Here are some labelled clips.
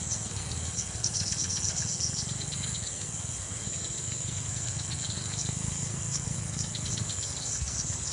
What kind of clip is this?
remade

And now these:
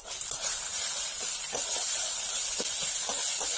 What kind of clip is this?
recorded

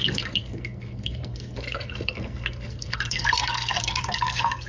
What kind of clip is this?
remade